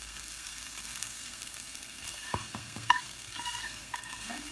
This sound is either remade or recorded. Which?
remade